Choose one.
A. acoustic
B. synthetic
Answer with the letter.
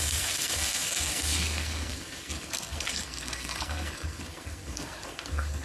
B